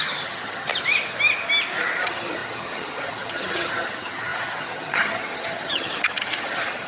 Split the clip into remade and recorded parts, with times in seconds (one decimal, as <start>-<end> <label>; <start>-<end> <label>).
0.0-0.7 remade; 0.7-2.0 recorded; 2.0-6.9 remade